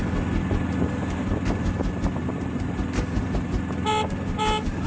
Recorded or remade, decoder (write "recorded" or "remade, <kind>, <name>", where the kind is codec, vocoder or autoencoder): recorded